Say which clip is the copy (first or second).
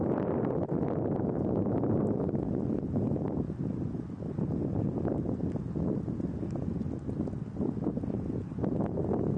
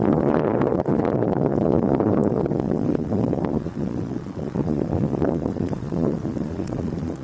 second